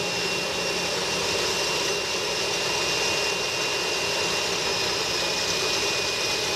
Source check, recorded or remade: recorded